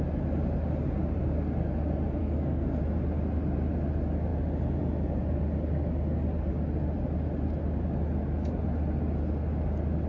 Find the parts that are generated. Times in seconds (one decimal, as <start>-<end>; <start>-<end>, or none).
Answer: 2.2-2.8